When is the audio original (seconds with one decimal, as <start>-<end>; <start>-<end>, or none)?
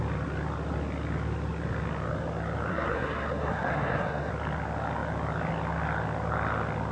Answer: 0.0-2.7; 4.3-6.9